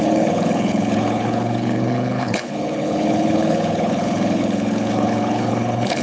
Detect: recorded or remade remade